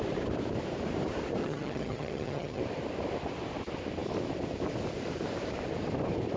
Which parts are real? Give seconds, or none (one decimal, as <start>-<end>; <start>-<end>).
0.0-1.4; 2.6-6.4